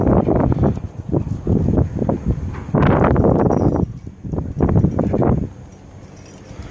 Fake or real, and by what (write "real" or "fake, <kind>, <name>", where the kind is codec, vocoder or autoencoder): real